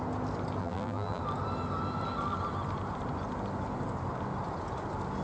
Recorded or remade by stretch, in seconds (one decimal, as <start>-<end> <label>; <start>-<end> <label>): 0.0-0.6 recorded; 0.6-1.2 remade; 1.2-5.2 recorded